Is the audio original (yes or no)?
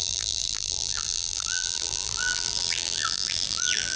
no